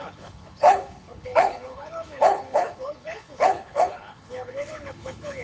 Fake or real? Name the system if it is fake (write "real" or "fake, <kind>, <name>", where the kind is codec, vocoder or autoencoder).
fake, codec, HILCodec